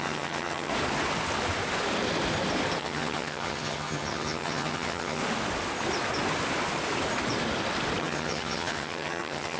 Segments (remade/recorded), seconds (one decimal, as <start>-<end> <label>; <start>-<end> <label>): 0.0-0.7 remade; 0.7-2.8 recorded; 2.8-5.2 remade; 5.2-8.0 recorded; 8.0-9.6 remade